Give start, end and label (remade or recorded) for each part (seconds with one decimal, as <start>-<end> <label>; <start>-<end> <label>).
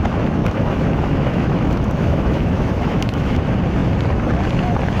0.0-0.4 recorded; 0.4-3.4 remade; 3.4-5.0 recorded